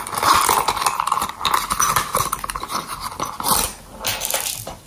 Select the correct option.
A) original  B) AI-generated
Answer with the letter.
A